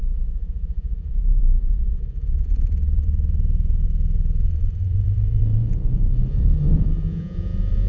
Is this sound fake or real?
fake